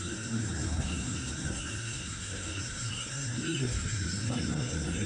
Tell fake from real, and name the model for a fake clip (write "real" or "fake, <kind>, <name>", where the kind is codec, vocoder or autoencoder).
fake, codec, SNAC